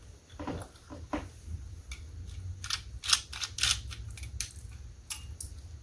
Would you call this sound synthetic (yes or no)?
no